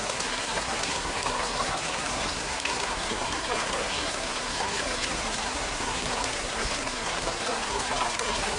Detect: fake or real fake